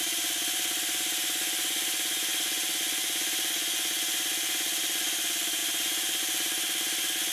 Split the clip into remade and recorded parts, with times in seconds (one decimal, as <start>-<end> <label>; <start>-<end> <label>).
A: 0.0-7.3 remade